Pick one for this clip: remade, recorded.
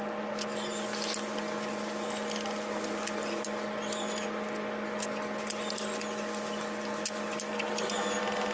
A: recorded